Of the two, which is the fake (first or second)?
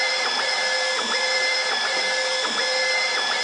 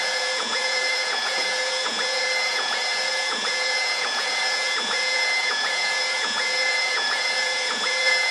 second